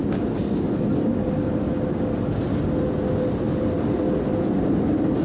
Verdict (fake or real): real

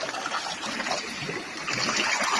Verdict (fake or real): real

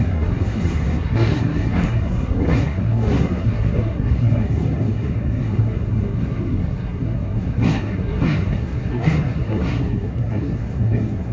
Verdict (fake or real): fake